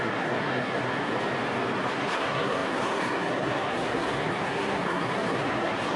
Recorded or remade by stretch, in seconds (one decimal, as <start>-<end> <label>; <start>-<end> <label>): 0.0-1.1 remade; 1.1-1.9 recorded; 1.9-6.0 remade